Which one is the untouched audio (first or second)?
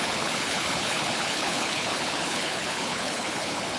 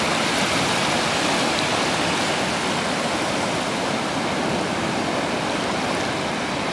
second